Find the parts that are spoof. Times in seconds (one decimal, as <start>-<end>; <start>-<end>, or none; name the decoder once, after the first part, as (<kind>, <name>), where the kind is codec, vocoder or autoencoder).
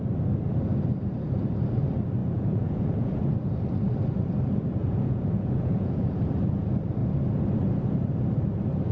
2.2-3.2 (vocoder, Vocos); 4.8-6.2